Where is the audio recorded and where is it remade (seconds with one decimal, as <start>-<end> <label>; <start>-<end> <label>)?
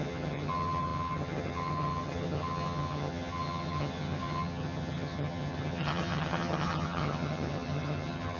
0.0-8.4 remade